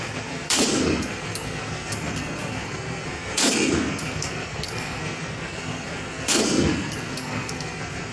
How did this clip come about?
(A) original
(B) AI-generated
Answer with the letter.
B